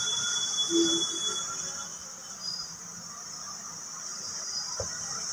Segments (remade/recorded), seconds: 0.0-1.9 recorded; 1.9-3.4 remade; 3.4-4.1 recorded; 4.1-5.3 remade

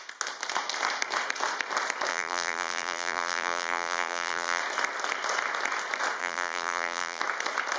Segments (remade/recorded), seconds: 0.0-2.1 recorded; 2.1-4.6 remade; 4.6-6.2 recorded; 6.2-7.2 remade; 7.2-7.8 recorded

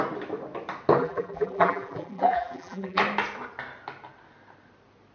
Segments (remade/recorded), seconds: 0.0-1.0 recorded; 1.0-3.0 remade; 3.0-5.1 recorded

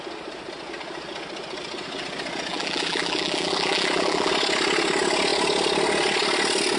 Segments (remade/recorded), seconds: 0.0-2.5 recorded; 2.5-4.3 remade; 4.3-6.8 recorded

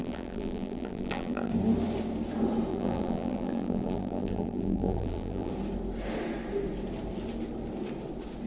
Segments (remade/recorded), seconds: 0.0-1.5 remade; 1.5-2.7 recorded; 2.7-5.5 remade; 5.5-8.5 recorded

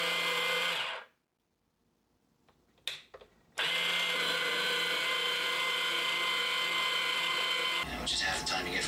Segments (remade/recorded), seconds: 0.0-8.9 recorded

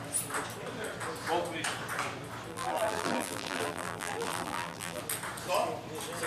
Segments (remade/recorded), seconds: 0.0-2.5 recorded; 2.5-5.0 remade; 5.0-6.3 recorded